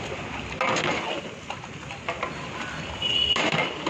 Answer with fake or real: real